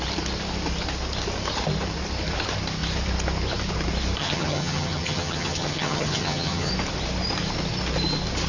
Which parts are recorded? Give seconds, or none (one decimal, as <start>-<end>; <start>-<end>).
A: 0.0-4.2; 6.7-8.5